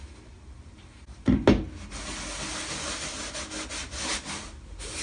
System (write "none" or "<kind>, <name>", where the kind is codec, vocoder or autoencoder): none